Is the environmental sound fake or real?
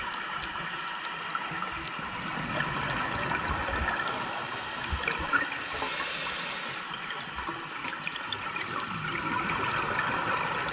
real